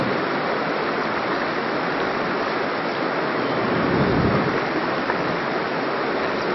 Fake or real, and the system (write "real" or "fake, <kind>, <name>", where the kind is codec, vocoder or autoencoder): real